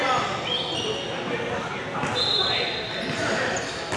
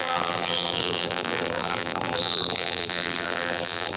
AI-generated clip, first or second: second